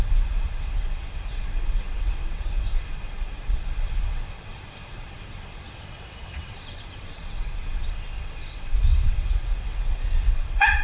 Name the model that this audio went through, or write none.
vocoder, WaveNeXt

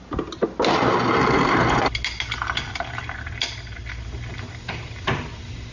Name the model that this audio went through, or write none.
none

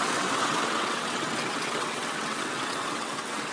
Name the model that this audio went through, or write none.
vocoder, WaveNeXt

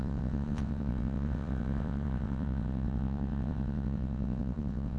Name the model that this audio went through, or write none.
vocoder, WaveNeXt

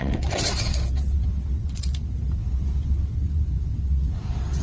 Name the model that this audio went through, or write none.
vocoder, WaveNeXt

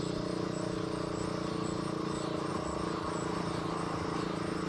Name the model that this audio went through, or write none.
none